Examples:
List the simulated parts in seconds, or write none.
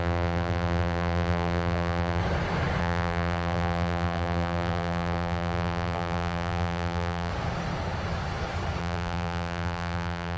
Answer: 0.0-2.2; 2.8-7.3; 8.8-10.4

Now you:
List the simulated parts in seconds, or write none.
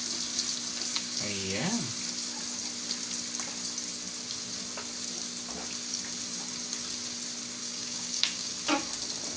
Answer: 0.9-1.7; 7.6-8.5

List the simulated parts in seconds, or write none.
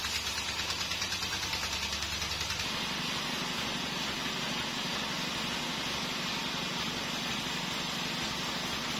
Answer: none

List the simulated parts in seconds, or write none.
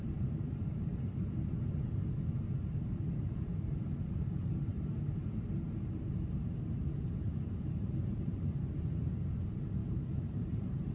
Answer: 0.0-0.9; 2.7-10.9